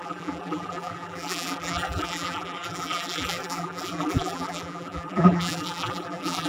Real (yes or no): no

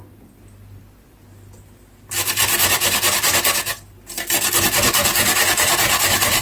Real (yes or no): yes